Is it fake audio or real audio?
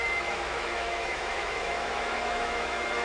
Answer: fake